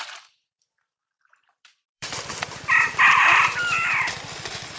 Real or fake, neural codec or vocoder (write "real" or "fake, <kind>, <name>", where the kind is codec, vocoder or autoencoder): fake, vocoder, BigVGAN v2